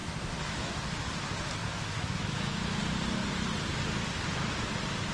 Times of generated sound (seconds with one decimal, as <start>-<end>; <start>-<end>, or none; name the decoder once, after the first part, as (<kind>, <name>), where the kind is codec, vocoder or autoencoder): 0.0-0.7 (autoencoder, DAC-VAE); 1.6-2.8